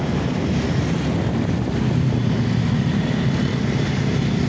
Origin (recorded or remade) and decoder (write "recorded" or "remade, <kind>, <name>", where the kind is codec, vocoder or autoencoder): recorded